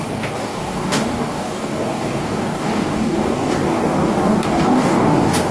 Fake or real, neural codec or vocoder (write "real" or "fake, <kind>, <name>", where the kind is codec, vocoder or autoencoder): fake, codec, DAC